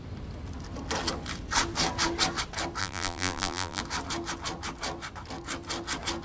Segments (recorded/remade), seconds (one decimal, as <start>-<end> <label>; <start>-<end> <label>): 0.0-2.8 recorded; 2.8-3.8 remade; 3.8-6.2 recorded

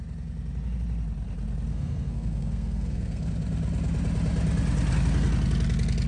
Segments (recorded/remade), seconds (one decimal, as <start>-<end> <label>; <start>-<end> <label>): 0.0-1.7 recorded; 1.7-3.3 remade; 3.3-6.1 recorded

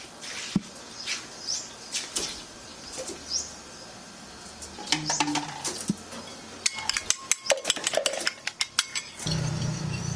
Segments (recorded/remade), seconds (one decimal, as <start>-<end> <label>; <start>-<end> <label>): 0.0-10.2 recorded

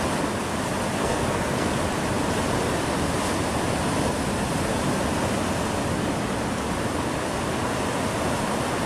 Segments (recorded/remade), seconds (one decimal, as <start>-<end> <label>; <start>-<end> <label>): 0.0-1.0 recorded; 1.0-1.7 remade; 1.7-8.9 recorded

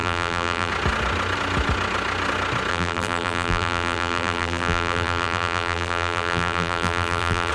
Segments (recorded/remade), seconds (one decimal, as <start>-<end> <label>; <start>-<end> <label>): 0.0-0.7 remade; 0.7-2.7 recorded; 2.7-7.5 remade

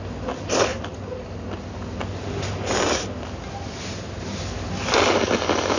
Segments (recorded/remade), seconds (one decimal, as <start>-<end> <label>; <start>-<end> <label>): 0.0-5.8 recorded

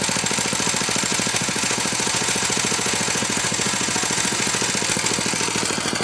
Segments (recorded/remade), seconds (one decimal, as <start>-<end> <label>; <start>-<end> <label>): 0.0-1.1 recorded; 1.1-4.7 remade; 4.7-6.0 recorded